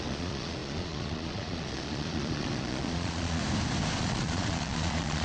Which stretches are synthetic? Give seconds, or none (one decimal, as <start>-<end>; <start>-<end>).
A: 0.0-3.4; 4.0-5.2